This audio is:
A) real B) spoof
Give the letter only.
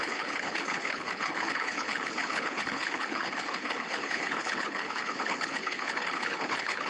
B